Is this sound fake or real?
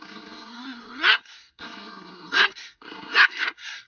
fake